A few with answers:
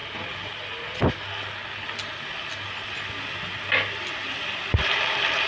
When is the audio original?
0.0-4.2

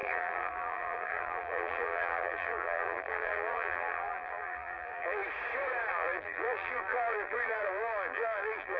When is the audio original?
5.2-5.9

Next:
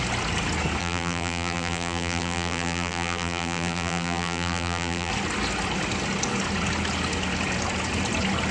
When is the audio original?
0.0-0.8; 5.1-8.5